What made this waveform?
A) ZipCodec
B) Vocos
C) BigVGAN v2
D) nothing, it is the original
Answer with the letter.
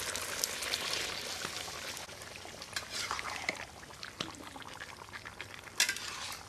D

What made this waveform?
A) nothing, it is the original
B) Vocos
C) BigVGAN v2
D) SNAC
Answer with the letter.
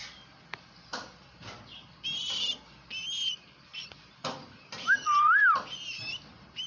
C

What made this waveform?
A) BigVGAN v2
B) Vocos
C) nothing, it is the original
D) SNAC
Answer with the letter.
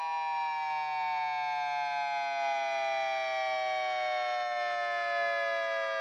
C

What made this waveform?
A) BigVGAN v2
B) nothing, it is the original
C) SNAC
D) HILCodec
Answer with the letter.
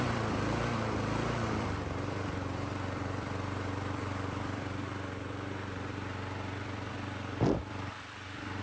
A